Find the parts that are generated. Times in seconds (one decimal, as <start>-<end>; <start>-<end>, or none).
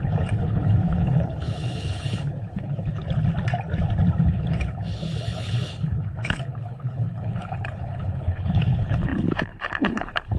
0.0-3.0; 4.2-10.4